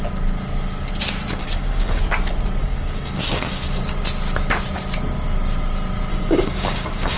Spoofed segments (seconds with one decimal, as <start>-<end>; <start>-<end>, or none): 1.4-2.0; 2.6-3.6; 6.1-7.2